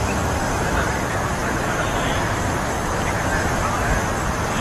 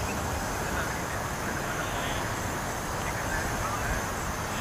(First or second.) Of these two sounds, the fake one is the first